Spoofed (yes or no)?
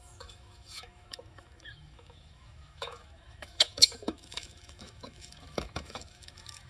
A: yes